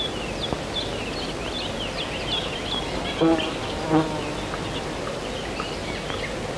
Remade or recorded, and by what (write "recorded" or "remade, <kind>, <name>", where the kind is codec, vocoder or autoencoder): recorded